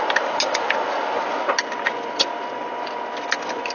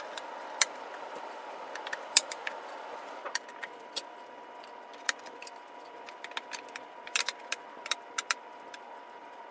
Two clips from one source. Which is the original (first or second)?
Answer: first